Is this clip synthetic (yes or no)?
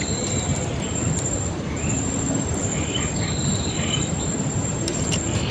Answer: no